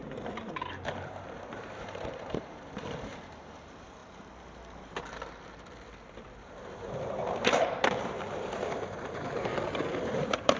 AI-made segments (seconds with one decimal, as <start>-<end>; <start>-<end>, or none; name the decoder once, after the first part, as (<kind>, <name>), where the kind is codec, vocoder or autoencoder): 0.0-4.0 (vocoder, BigVGAN v2); 6.4-9.5; 10.0-10.6

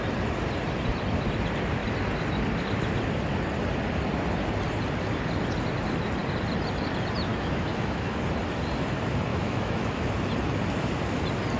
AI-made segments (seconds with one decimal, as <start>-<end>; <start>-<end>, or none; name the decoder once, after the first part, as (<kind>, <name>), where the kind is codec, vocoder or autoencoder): 7.3-8.2 (autoencoder, DAC-VAE); 9.3-10.1

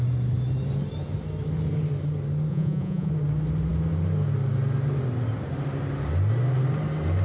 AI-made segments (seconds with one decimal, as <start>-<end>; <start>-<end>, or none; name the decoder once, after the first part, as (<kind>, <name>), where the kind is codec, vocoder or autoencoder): 2.5-3.1 (vocoder, Vocos)

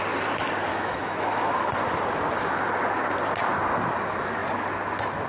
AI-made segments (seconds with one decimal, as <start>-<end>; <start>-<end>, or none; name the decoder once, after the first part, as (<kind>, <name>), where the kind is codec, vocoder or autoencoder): 0.7-1.7 (autoencoder, DAC-VAE)

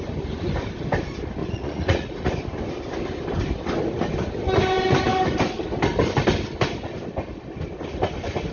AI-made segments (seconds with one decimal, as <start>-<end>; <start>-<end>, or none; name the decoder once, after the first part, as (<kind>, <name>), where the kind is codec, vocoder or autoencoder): 1.4-2.4 (vocoder, Vocos)

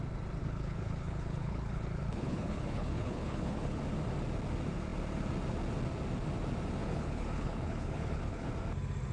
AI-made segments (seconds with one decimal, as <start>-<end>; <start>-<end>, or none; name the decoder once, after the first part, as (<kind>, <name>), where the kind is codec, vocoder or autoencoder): 0.4-3.8 (codec, HILCodec); 6.8-8.5